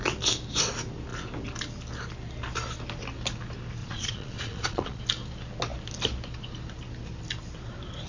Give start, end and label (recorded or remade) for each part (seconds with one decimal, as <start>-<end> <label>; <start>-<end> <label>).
0.0-3.8 recorded; 3.8-5.0 remade; 5.0-8.1 recorded